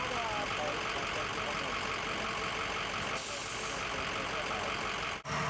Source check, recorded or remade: recorded